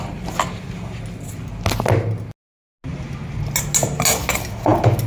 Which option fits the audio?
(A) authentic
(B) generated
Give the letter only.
A